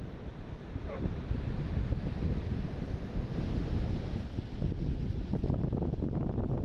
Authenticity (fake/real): real